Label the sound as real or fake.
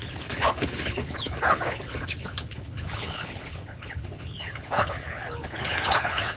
fake